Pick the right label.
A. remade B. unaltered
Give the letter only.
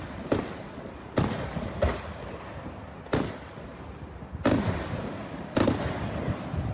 B